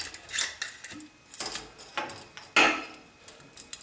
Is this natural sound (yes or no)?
yes